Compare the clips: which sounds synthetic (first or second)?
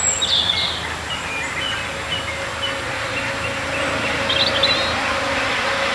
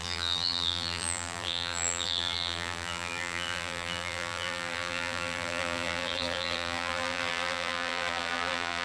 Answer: second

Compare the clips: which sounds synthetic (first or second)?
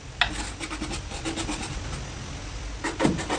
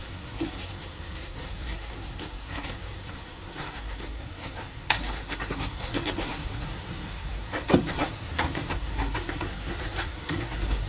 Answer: second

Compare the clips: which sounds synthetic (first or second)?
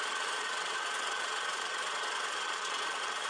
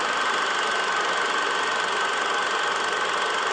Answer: first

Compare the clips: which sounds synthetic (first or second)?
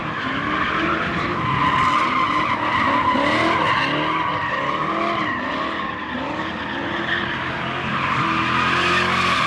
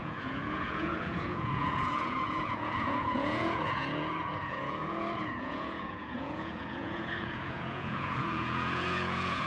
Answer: second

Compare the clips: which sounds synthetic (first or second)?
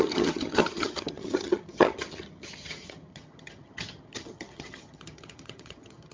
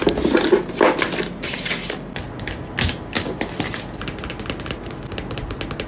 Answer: first